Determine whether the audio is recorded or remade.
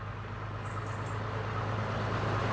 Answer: recorded